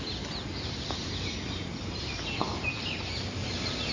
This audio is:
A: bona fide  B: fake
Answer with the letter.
A